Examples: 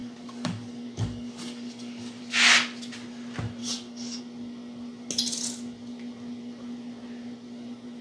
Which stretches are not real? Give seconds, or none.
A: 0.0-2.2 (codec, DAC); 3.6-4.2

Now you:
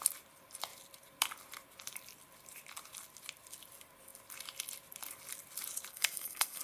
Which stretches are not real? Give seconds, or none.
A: 5.9-6.6 (codec, SNAC)

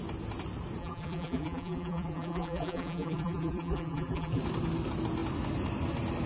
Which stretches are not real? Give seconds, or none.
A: 0.8-4.4 (vocoder, BigVGAN v2)

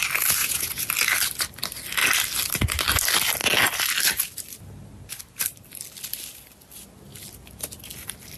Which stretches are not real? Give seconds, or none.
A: 0.4-0.9 (vocoder, Vocos)

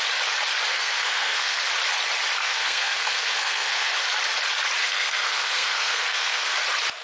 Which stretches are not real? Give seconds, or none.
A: 0.7-1.6 (codec, SNAC); 2.4-3.9; 4.8-6.5

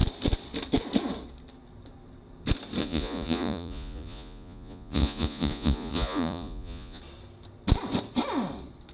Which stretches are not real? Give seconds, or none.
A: 2.8-7.0 (vocoder, Vocos)

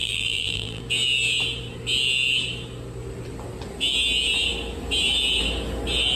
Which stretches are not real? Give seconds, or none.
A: 0.0-0.8 (vocoder, BigVGAN v2)

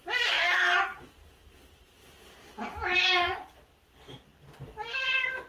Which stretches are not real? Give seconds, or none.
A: 0.0-3.3 (vocoder, BigVGAN v2)